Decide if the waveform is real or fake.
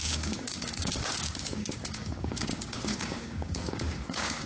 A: fake